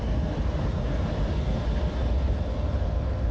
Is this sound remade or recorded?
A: recorded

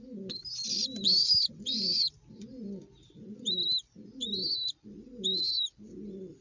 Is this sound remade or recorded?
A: recorded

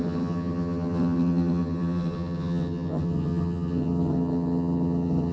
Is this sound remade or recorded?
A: remade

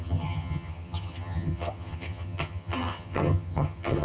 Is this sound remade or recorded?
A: remade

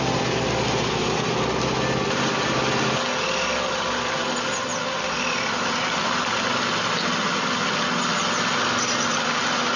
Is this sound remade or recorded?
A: recorded